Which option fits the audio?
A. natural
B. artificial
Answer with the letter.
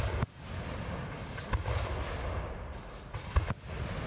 A